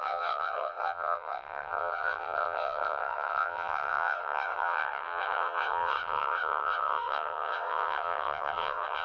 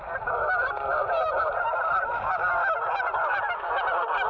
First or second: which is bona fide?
second